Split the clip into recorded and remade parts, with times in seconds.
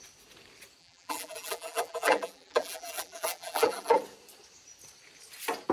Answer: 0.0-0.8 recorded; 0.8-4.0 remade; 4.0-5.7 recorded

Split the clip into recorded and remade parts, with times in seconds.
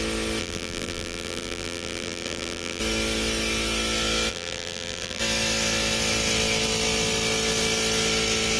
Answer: 0.0-0.4 recorded; 0.4-2.8 remade; 2.8-4.3 recorded; 4.3-5.2 remade; 5.2-8.6 recorded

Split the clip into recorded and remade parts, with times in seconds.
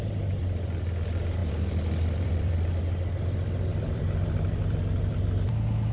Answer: 0.0-1.4 recorded; 1.4-2.8 remade; 2.8-3.7 recorded; 3.7-5.5 remade; 5.5-5.9 recorded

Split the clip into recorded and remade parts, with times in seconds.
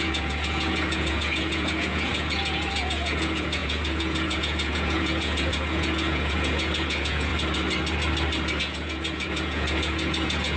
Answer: 0.0-7.3 remade; 7.3-8.6 recorded; 8.6-10.6 remade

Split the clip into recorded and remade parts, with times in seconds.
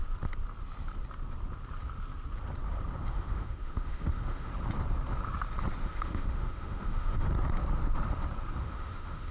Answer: 0.0-3.1 recorded; 3.1-4.5 remade; 4.5-5.8 recorded; 5.8-7.3 remade; 7.3-8.6 recorded; 8.6-9.3 remade